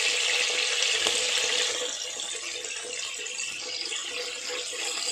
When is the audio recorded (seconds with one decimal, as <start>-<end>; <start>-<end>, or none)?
0.0-5.1